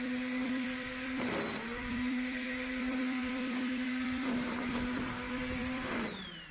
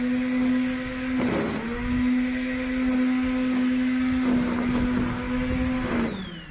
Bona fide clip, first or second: second